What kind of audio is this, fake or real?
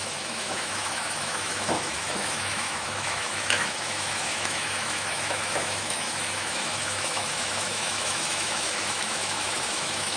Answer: fake